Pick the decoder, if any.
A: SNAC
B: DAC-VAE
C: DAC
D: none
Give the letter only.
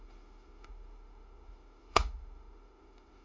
B